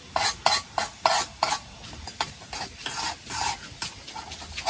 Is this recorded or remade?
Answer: recorded